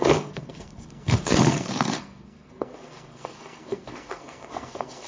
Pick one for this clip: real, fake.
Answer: fake